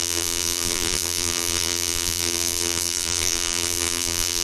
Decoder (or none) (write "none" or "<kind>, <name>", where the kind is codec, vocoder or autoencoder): vocoder, BigVGAN v2